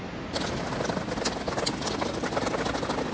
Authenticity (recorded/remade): recorded